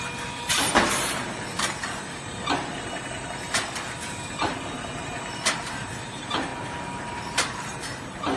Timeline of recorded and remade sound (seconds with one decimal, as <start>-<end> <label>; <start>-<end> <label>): 0.0-8.4 remade